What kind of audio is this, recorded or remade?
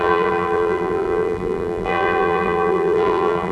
remade